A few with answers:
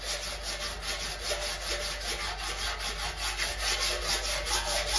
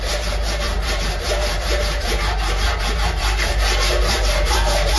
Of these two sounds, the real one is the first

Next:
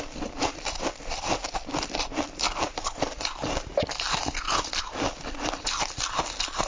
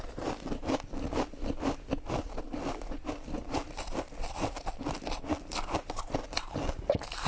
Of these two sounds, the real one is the second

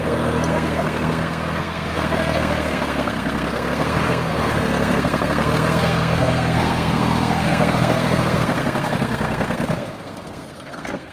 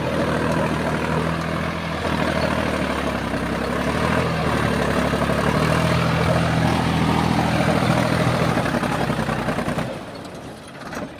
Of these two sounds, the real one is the second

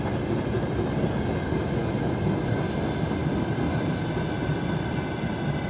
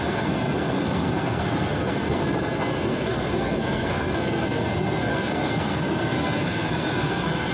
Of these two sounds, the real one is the first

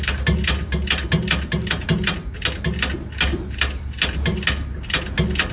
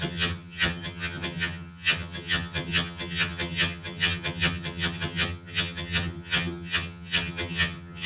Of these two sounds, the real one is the first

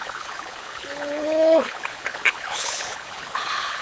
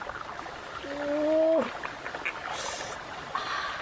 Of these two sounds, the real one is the second